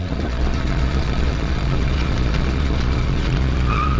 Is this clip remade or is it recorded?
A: remade